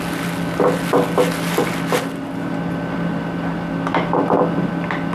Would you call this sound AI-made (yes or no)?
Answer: no